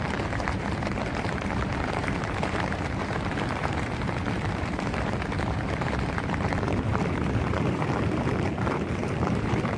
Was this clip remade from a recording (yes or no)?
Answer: yes